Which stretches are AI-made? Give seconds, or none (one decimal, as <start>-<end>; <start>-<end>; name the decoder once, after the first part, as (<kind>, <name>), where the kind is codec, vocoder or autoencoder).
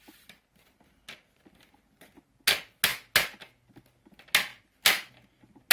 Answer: none